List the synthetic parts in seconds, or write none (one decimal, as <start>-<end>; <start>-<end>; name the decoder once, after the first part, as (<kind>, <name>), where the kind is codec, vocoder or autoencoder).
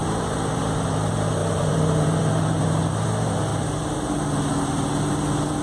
0.0-0.6 (vocoder, BigVGAN v2); 1.4-2.3